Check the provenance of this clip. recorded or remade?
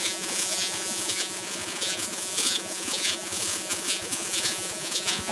remade